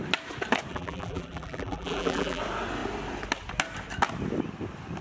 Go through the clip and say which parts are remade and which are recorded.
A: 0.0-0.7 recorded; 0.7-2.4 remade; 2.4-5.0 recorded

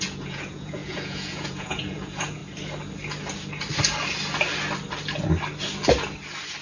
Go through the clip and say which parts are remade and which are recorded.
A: 0.0-2.4 remade; 2.4-6.6 recorded

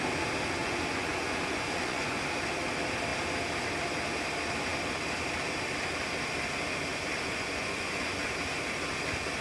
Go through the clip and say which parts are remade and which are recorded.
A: 0.0-0.6 recorded; 0.6-2.2 remade; 2.2-6.9 recorded; 6.9-8.3 remade; 8.3-9.4 recorded

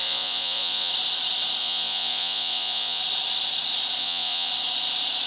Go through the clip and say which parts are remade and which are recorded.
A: 0.0-0.9 remade; 0.9-1.6 recorded; 1.6-3.0 remade; 3.0-4.0 recorded; 4.0-4.5 remade; 4.5-5.3 recorded

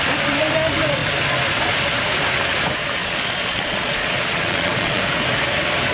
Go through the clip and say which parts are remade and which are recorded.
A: 0.0-3.0 recorded; 3.0-5.0 remade; 5.0-5.9 recorded